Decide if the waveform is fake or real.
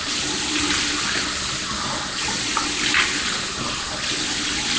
real